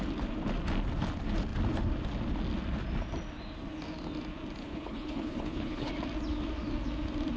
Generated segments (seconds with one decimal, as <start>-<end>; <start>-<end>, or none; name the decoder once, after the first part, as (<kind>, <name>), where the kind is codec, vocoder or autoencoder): 4.6-5.9 (codec, HILCodec)